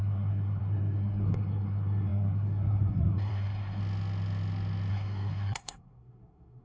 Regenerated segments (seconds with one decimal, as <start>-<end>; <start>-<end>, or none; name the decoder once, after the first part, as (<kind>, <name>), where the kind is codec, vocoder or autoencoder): 0.0-3.8 (codec, SNAC); 4.9-6.6